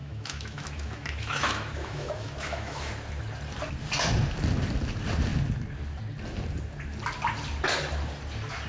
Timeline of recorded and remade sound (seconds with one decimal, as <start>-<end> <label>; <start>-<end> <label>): 0.0-2.9 remade; 2.9-8.7 recorded